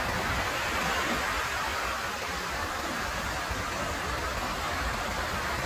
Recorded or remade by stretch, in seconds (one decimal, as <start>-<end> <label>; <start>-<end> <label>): 0.0-5.7 recorded